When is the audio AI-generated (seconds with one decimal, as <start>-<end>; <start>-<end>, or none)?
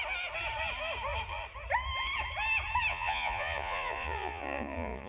2.9-5.1